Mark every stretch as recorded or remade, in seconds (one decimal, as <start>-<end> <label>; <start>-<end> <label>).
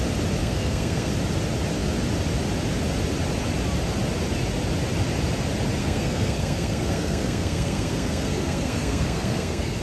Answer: 0.0-0.4 recorded; 0.4-1.1 remade; 1.1-5.8 recorded; 5.8-9.8 remade